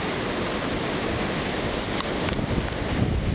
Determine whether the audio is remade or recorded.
recorded